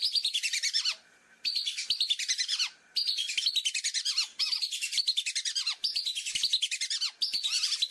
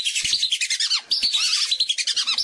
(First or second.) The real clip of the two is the second